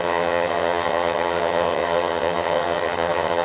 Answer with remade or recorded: remade